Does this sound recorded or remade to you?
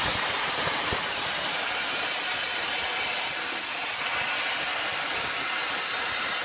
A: recorded